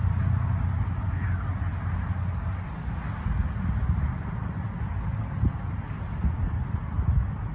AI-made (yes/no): no